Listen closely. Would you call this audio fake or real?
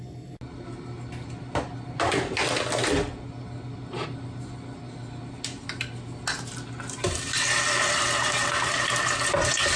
real